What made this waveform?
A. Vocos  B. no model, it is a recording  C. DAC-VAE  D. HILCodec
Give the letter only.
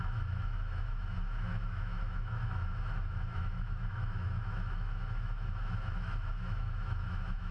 C